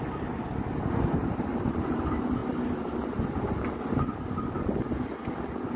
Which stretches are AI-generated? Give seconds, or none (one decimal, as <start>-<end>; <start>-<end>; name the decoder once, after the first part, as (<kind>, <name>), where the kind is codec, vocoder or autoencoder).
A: 1.2-1.9 (vocoder, BigVGAN v2)